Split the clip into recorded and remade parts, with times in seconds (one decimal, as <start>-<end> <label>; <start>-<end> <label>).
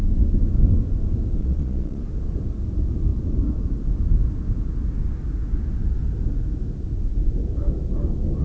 0.0-1.4 recorded; 1.4-2.0 remade; 2.0-8.4 recorded